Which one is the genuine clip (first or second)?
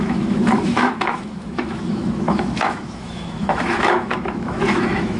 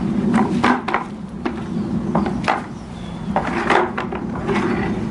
second